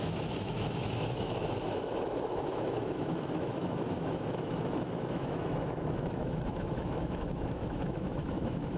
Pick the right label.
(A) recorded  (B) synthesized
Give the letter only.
B